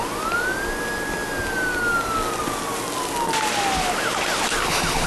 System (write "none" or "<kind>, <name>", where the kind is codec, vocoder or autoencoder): none